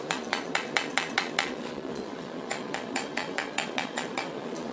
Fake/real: fake